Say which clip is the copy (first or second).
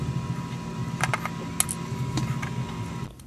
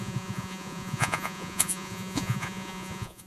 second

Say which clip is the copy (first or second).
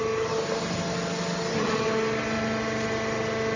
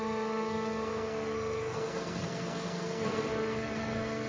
second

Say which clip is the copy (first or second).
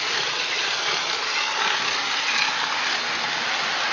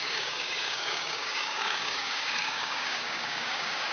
second